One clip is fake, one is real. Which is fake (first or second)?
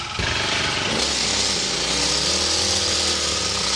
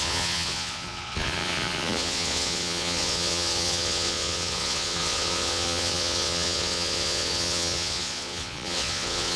second